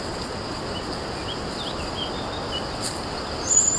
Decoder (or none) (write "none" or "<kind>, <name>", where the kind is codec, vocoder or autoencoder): none